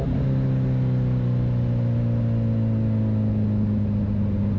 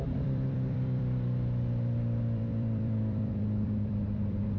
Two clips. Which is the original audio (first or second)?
first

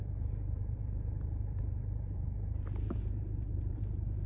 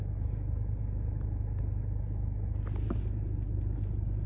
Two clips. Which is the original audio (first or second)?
second